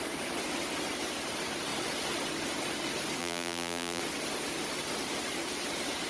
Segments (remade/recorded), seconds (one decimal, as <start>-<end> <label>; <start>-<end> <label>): 0.0-3.2 recorded; 3.2-4.0 remade; 4.0-6.1 recorded

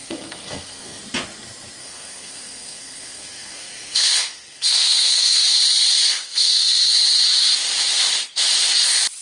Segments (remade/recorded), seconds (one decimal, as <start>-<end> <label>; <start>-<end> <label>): 0.0-1.0 remade; 1.0-1.8 recorded; 1.8-5.4 remade; 5.4-6.1 recorded; 6.1-6.9 remade; 6.9-9.2 recorded

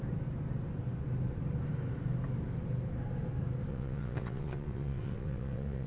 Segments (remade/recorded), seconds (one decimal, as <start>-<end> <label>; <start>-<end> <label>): 0.0-3.7 recorded; 3.7-5.9 remade

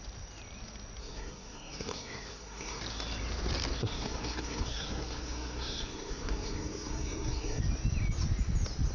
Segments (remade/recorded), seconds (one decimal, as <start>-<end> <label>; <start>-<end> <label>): 0.0-1.0 recorded; 1.0-2.8 remade; 2.8-3.8 recorded; 3.8-7.6 remade; 7.6-8.9 recorded